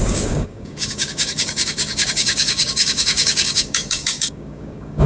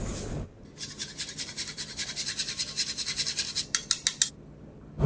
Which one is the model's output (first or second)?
first